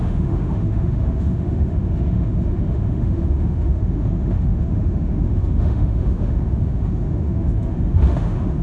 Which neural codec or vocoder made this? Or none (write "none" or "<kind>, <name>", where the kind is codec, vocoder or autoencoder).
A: autoencoder, DAC-VAE